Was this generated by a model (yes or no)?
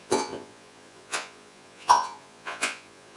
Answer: yes